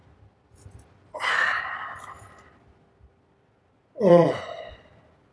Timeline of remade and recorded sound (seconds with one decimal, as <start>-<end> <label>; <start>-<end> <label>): 0.0-5.3 recorded